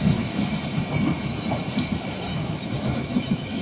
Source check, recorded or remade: remade